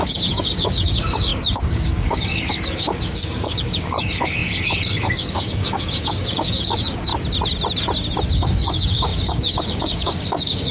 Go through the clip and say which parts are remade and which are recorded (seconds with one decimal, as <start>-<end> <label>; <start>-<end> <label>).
0.0-7.1 remade; 7.1-8.3 recorded; 8.3-10.7 remade